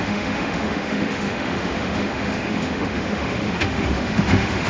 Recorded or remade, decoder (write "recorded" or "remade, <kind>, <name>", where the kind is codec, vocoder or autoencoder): remade, autoencoder, DAC-VAE